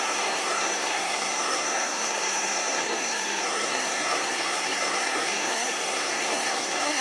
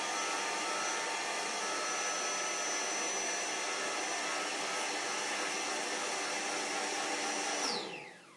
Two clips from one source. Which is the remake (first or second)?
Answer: first